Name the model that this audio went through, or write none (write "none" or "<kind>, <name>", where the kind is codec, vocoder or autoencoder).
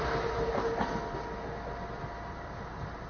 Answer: none